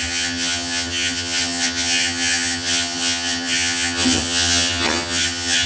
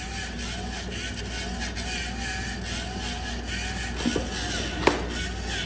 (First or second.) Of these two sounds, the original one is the second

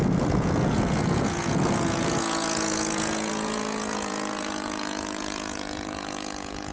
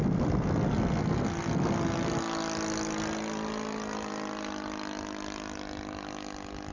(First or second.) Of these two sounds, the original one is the second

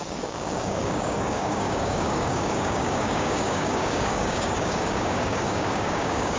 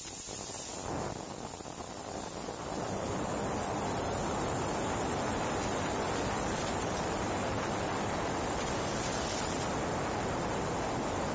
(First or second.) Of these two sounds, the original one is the second